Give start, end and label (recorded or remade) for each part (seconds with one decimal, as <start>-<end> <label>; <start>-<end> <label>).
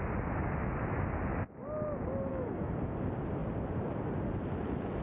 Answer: 0.0-2.3 recorded; 2.3-2.9 remade; 2.9-5.0 recorded